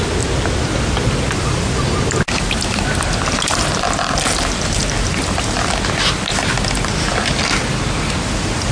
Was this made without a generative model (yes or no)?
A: yes